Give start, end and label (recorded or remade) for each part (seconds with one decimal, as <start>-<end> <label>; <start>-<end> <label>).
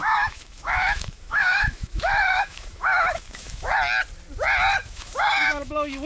0.0-3.7 remade; 3.7-4.8 recorded; 4.8-6.1 remade